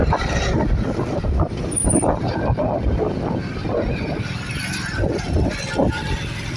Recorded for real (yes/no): yes